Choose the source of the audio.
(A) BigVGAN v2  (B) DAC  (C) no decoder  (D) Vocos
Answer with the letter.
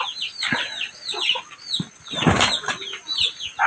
C